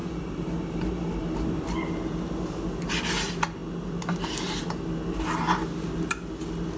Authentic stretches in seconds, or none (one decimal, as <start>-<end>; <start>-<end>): 0.0-6.8